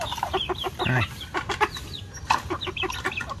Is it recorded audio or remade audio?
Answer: recorded